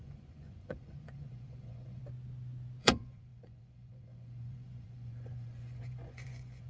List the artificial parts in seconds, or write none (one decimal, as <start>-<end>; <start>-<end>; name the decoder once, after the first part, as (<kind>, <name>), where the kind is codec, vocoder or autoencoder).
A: 0.0-2.0 (vocoder, Vocos); 2.8-6.7